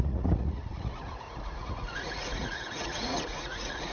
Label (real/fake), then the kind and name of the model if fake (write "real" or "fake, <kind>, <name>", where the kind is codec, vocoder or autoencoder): fake, vocoder, Vocos